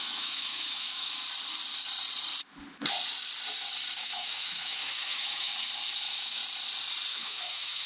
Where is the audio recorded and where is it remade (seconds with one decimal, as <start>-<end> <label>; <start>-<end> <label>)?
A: 0.0-1.2 remade; 1.2-4.0 recorded; 4.0-5.5 remade; 5.5-6.0 recorded; 6.0-6.4 remade; 6.4-7.1 recorded; 7.1-7.9 remade